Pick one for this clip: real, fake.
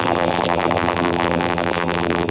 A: fake